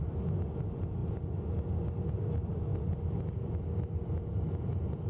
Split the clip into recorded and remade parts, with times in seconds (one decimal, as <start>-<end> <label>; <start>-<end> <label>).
0.0-5.1 recorded